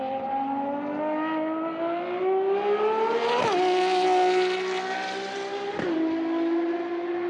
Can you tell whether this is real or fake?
real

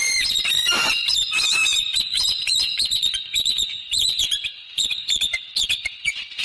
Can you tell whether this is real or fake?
fake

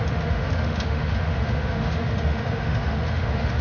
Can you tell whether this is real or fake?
fake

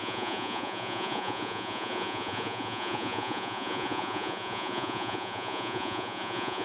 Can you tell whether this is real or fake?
fake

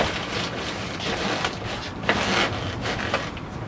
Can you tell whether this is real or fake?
real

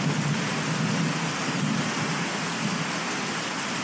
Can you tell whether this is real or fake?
real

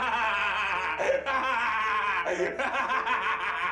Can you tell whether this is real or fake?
real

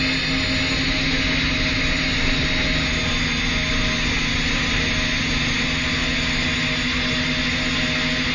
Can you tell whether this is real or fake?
real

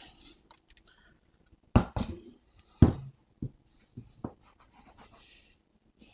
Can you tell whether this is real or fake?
real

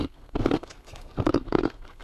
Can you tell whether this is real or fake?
fake